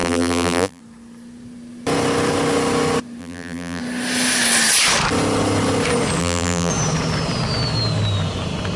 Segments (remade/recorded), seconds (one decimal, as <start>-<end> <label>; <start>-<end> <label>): 0.0-0.8 remade; 0.8-3.2 recorded; 3.2-3.8 remade; 3.8-6.2 recorded; 6.2-6.7 remade; 6.7-8.8 recorded